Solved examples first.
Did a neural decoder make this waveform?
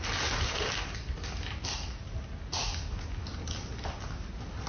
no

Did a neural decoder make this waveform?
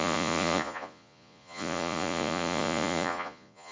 yes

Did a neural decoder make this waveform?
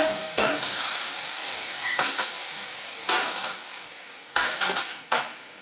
yes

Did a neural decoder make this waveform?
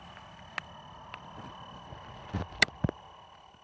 no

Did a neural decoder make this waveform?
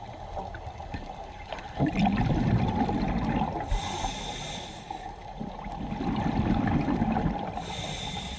no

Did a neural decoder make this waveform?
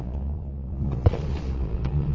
yes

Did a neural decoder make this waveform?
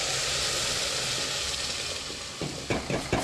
no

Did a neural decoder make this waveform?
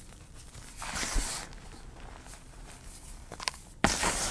yes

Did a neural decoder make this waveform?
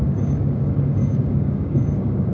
yes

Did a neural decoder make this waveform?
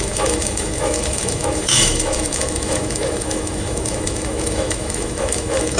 yes